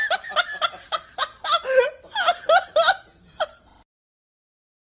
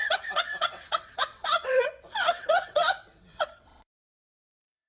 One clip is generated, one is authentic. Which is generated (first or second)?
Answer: second